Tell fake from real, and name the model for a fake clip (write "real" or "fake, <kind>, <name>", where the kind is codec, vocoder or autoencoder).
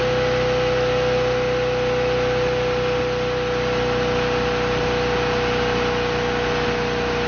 real